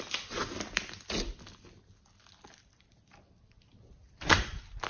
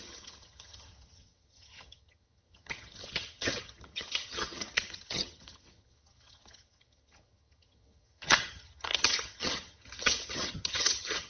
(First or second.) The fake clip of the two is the second